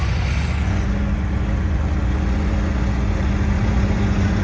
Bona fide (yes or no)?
no